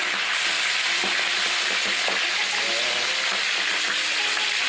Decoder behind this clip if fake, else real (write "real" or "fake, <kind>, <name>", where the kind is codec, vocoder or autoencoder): real